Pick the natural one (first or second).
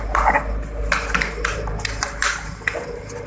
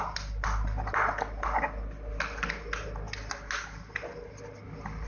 second